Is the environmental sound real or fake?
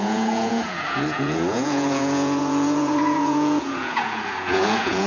fake